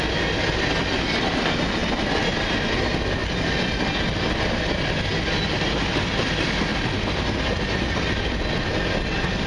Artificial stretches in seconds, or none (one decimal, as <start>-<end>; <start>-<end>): none